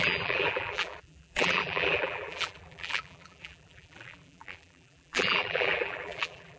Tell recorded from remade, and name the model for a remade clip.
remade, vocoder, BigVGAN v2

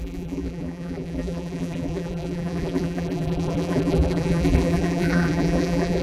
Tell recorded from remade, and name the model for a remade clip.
remade, vocoder, BigVGAN v2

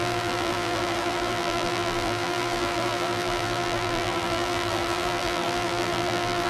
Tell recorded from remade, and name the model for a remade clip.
remade, vocoder, BigVGAN v2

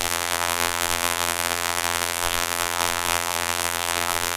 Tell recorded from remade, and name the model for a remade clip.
remade, vocoder, BigVGAN v2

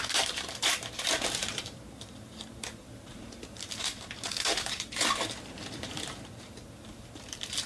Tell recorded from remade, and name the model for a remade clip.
remade, vocoder, BigVGAN v2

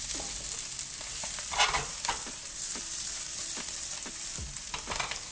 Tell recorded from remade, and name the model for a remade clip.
remade, vocoder, BigVGAN v2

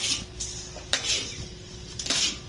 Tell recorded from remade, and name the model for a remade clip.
remade, vocoder, BigVGAN v2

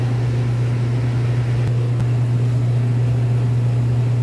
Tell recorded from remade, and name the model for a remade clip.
recorded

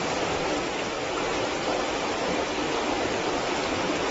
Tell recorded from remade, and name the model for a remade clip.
recorded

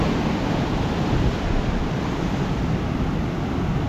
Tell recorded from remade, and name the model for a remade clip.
remade, vocoder, BigVGAN v2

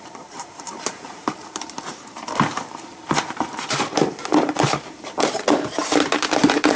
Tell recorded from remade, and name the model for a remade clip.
remade, vocoder, BigVGAN v2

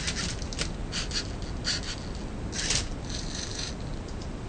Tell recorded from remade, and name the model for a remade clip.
recorded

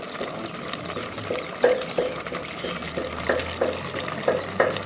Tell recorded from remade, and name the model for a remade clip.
recorded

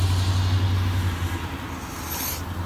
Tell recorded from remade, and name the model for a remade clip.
recorded